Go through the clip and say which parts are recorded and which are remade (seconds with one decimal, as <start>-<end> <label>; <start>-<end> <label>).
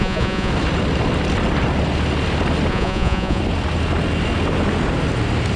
0.0-0.5 remade; 0.5-2.7 recorded; 2.7-3.4 remade; 3.4-5.6 recorded